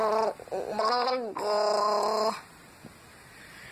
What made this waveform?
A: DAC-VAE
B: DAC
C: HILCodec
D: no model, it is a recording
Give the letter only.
D